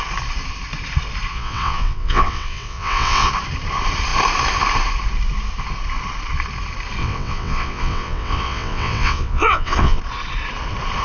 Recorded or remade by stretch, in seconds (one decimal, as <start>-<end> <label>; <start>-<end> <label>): 0.0-1.3 recorded; 1.3-3.3 remade; 3.3-7.0 recorded; 7.0-10.0 remade; 10.0-11.0 recorded